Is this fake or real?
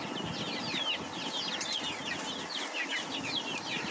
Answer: real